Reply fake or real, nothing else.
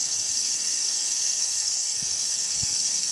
fake